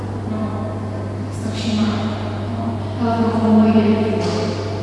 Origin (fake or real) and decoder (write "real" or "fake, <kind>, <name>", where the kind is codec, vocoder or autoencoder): real